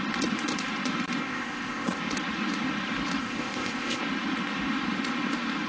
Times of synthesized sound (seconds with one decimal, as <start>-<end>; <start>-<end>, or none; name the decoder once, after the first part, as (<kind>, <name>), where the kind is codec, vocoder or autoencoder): 1.2-2.0 (codec, ZipCodec); 3.2-4.0

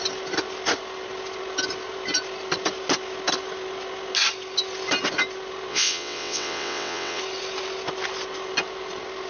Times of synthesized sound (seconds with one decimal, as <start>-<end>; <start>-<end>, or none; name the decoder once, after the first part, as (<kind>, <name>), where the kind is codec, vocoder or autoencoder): 5.7-7.2 (vocoder, WaveNeXt)

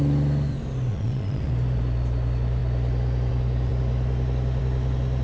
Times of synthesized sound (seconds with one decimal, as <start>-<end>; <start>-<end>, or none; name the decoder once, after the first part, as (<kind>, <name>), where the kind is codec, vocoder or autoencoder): 0.9-1.5 (vocoder, Vocos)

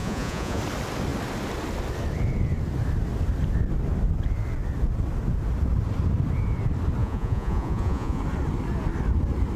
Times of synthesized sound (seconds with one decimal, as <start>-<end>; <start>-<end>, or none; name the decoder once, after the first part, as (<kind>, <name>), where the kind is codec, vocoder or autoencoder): 0.0-0.6 (vocoder, Vocos); 7.0-8.2

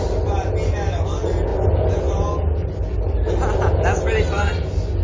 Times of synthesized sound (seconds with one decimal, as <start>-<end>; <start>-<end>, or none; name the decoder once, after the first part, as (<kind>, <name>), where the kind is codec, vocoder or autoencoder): none

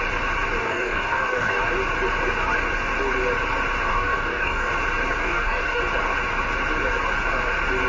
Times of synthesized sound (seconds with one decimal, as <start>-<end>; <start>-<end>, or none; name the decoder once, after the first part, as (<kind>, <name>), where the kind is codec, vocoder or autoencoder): 0.6-1.6 (codec, DAC); 3.9-4.7; 5.2-5.8

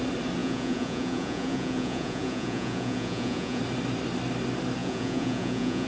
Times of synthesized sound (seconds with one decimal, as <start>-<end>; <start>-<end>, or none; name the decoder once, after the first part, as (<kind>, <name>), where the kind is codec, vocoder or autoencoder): 0.4-3.6 (vocoder, Vocos); 4.8-5.9

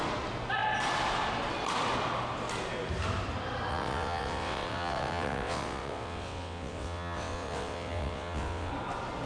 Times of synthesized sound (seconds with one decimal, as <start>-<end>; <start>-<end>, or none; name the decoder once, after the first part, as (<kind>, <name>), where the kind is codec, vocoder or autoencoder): 3.7-8.7 (vocoder, WaveNeXt)